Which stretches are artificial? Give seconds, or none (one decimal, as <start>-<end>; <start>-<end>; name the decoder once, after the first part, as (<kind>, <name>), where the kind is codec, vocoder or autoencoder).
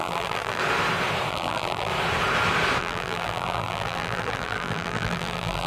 0.0-0.6 (vocoder, BigVGAN v2); 1.3-1.9; 2.8-5.7